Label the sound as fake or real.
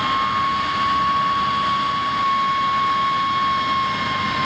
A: real